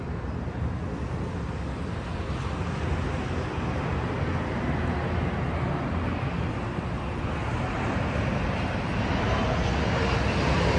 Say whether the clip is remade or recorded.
recorded